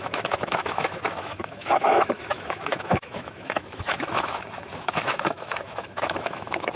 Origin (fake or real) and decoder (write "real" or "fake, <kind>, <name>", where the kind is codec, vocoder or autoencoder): fake, autoencoder, DAC-VAE